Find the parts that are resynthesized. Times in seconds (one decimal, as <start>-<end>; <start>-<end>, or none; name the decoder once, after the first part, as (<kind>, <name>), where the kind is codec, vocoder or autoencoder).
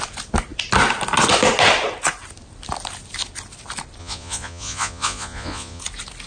4.0-5.8 (vocoder, Vocos)